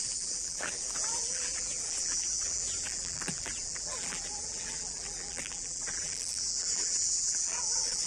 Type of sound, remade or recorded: remade